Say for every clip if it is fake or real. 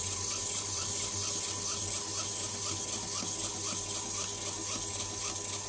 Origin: real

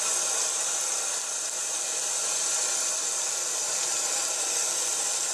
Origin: real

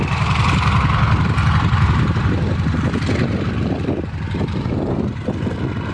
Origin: fake